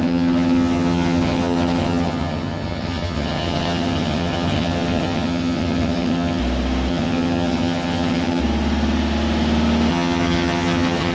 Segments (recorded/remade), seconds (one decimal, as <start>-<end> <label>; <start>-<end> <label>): 0.0-6.4 remade; 6.4-6.9 recorded; 6.9-8.4 remade; 8.4-9.9 recorded; 9.9-11.1 remade